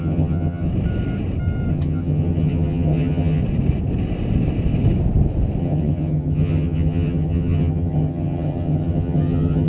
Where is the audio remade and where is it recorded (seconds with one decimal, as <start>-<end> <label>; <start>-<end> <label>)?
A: 0.0-0.7 remade; 0.7-1.7 recorded; 1.7-3.4 remade; 3.4-5.6 recorded; 5.6-9.7 remade